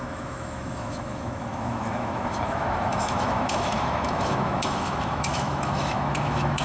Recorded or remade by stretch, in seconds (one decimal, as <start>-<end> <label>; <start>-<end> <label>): 0.0-6.6 remade